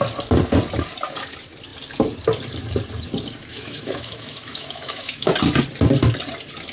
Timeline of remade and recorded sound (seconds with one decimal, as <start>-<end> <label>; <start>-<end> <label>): 0.0-3.4 recorded; 3.4-5.3 remade; 5.3-6.7 recorded